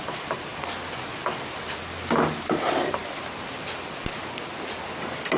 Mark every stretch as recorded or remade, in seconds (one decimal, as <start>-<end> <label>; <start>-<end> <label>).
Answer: 0.0-3.0 recorded; 3.0-3.5 remade; 3.5-5.4 recorded

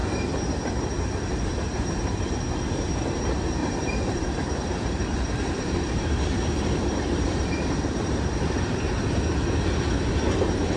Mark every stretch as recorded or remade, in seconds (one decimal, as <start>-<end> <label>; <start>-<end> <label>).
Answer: 0.0-3.6 recorded; 3.6-8.6 remade; 8.6-10.8 recorded

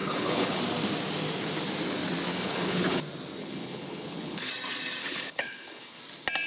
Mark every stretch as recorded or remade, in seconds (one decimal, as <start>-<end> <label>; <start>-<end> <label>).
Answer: 0.0-0.6 remade; 0.6-2.3 recorded; 2.3-3.0 remade; 3.0-3.4 recorded; 3.4-4.5 remade; 4.5-5.0 recorded; 5.0-6.0 remade; 6.0-6.5 recorded

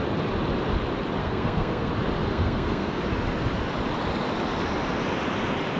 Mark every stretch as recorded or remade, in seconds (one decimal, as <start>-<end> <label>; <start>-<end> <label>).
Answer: 0.0-1.2 recorded; 1.2-1.9 remade; 1.9-2.3 recorded; 2.3-3.0 remade; 3.0-5.8 recorded